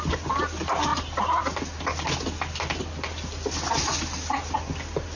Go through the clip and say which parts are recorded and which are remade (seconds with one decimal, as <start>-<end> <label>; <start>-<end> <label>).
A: 0.0-5.2 recorded